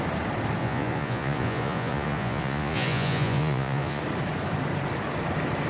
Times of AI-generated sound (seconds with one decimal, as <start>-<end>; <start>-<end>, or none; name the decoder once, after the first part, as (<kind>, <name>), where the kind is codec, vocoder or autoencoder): 0.6-4.0 (vocoder, Vocos)